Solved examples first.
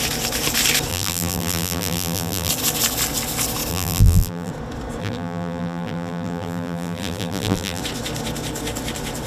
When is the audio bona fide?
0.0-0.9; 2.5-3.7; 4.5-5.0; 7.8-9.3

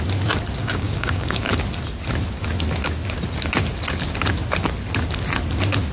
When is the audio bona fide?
0.0-0.6; 1.5-5.9

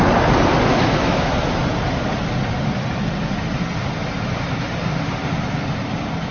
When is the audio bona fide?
0.0-0.7; 1.3-6.3

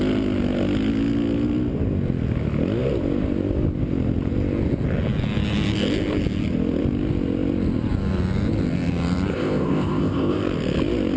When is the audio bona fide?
0.0-9.3; 10.4-11.2

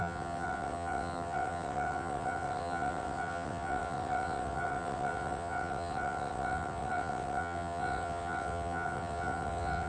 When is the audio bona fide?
none

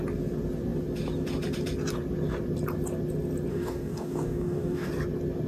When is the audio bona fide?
0.0-3.5; 4.9-5.5